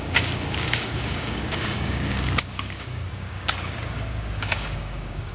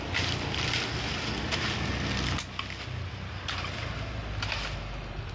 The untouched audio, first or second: second